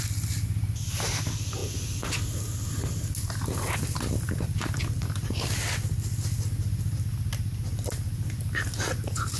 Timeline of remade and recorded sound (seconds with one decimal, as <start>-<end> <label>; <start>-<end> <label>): 0.0-9.4 recorded